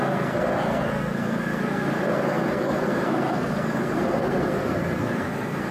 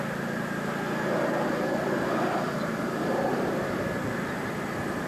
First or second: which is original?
second